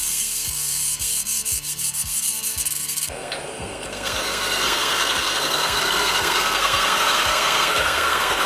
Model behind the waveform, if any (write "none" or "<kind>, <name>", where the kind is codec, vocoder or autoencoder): codec, SNAC